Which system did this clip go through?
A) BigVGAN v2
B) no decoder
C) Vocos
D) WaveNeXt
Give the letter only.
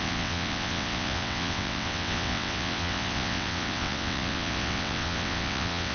D